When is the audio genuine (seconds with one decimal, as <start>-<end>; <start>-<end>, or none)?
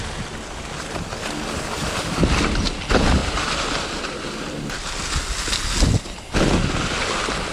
0.0-3.2; 4.9-7.5